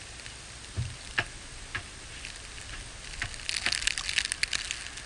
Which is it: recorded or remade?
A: recorded